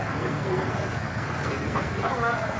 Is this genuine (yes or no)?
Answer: no